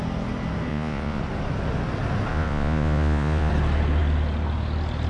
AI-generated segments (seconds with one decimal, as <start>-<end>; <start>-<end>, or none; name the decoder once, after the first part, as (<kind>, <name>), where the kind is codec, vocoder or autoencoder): 0.7-1.2 (vocoder, Vocos); 2.3-3.5